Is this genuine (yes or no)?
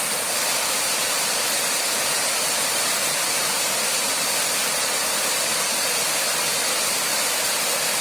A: yes